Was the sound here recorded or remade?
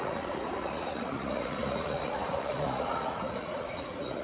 remade